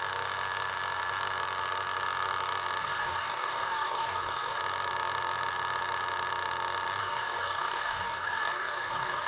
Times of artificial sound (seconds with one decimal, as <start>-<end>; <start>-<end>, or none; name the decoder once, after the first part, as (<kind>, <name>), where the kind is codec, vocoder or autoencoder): 2.8-4.6 (codec, DAC); 7.0-9.3

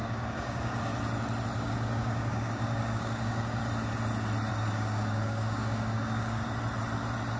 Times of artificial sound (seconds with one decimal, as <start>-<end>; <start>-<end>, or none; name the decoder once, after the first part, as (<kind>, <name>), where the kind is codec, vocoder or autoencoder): 0.0-0.9 (codec, DAC); 1.6-3.6; 4.5-6.4

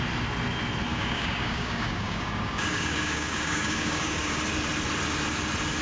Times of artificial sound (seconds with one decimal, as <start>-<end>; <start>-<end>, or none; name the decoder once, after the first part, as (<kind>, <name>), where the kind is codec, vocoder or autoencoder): 0.9-4.4 (codec, DAC)